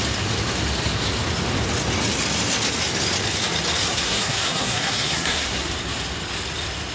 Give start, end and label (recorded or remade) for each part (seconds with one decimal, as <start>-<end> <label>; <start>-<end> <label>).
0.0-3.9 recorded; 3.9-5.7 remade; 5.7-6.9 recorded